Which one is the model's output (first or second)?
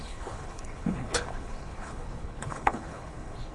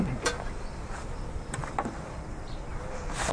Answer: first